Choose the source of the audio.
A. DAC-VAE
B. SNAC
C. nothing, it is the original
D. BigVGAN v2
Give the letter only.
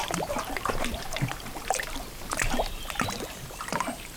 D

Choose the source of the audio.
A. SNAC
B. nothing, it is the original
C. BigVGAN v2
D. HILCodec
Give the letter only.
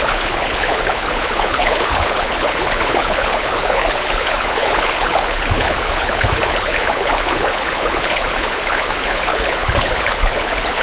D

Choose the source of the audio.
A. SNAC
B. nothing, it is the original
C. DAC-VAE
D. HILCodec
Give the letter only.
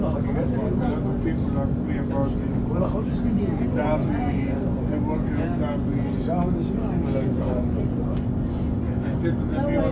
B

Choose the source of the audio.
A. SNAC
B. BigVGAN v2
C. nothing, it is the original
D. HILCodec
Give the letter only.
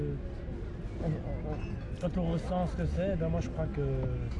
C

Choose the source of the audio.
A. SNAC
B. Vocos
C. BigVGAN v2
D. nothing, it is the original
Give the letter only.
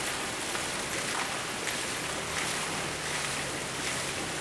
D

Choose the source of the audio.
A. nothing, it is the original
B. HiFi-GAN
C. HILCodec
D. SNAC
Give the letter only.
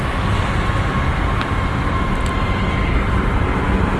A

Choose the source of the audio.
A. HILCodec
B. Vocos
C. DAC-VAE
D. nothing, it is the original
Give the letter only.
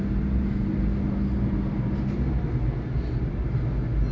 D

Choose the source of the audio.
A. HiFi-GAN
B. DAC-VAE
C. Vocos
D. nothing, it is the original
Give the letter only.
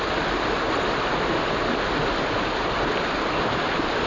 D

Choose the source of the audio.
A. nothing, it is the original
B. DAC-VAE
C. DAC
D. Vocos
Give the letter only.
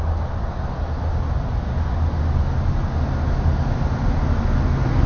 A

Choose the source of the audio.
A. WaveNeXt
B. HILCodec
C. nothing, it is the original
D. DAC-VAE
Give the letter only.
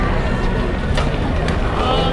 C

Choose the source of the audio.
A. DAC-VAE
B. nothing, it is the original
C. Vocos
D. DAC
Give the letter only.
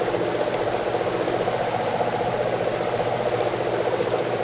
B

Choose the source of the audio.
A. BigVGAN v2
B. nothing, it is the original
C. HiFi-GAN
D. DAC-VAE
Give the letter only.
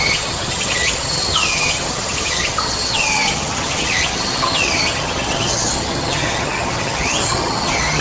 C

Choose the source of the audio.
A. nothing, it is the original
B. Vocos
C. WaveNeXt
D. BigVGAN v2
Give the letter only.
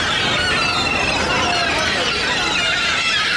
A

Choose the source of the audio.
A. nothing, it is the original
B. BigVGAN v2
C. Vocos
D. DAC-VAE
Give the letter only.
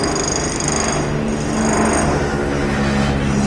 A